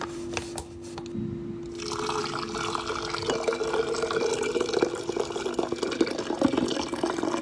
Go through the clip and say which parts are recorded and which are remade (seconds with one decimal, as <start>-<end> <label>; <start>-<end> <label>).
0.0-7.4 recorded